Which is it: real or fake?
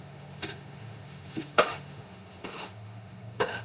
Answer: fake